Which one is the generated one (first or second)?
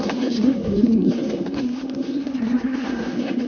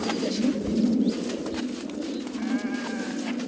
first